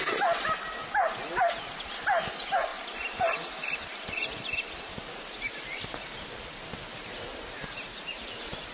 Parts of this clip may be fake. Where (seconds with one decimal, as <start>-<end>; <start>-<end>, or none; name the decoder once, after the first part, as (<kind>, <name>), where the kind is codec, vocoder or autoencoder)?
2.7-5.6 (vocoder, BigVGAN v2); 6.9-8.7